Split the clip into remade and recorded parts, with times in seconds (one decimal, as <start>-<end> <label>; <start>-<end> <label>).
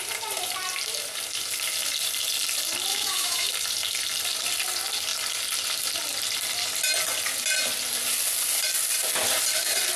0.0-2.9 recorded; 2.9-3.5 remade; 3.5-10.0 recorded